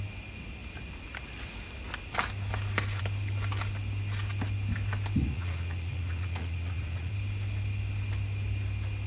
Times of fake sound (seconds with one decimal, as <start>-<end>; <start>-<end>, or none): 5.2-7.1